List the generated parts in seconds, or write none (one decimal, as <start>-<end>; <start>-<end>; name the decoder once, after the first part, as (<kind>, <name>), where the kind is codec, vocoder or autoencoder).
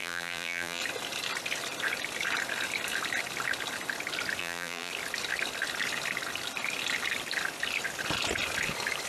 0.0-0.8 (vocoder, BigVGAN v2); 4.4-4.9